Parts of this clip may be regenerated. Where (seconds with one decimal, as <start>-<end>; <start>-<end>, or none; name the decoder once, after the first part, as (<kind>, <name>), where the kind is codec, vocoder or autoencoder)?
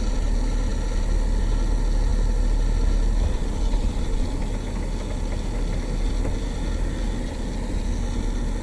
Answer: none